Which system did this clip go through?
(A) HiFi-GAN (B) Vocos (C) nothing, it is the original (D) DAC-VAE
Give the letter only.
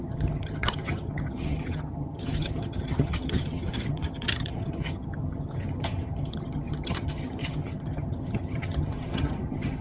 A